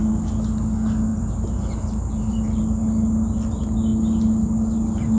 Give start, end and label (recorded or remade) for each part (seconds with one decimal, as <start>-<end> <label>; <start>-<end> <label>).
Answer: 0.0-1.1 recorded; 1.1-2.6 remade; 2.6-5.2 recorded